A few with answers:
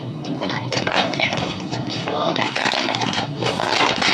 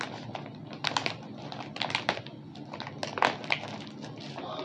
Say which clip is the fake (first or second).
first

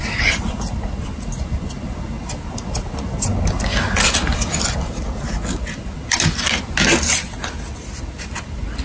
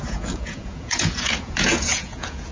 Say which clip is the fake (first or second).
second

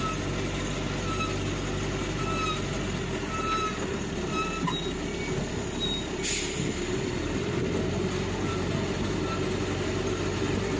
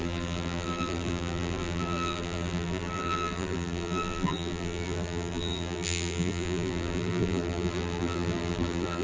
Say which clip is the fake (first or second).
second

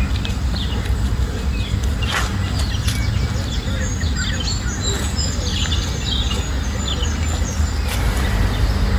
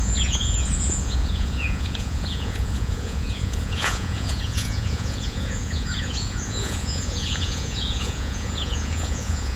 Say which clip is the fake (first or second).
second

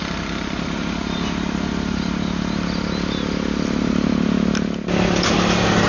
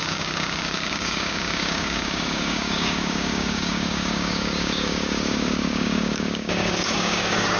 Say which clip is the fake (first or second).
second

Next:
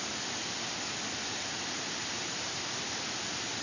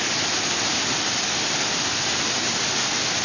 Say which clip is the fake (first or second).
first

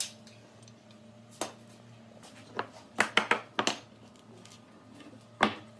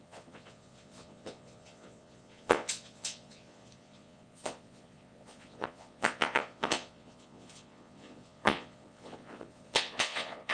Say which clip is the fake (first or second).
second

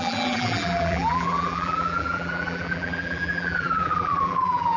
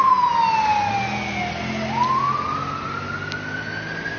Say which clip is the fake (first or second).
first